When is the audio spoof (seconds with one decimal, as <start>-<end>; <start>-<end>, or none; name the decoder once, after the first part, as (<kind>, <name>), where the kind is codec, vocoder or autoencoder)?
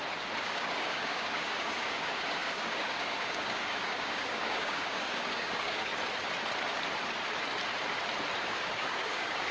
0.0-5.9 (codec, DAC); 8.4-9.5